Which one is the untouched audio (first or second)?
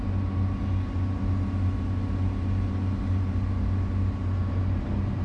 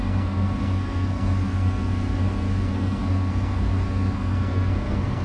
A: first